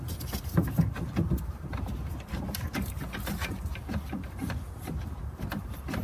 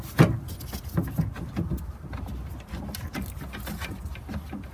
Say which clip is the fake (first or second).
first